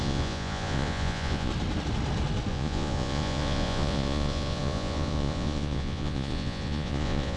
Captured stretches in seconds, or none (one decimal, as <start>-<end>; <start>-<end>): 1.5-2.5